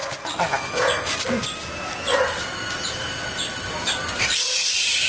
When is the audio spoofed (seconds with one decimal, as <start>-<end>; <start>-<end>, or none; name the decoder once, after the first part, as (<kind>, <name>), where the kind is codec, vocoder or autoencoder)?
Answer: none